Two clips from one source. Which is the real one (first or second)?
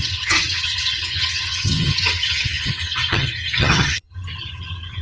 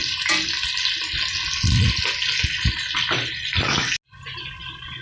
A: second